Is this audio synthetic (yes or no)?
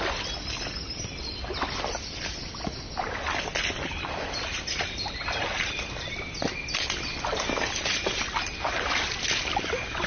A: no